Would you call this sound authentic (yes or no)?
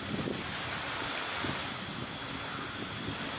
yes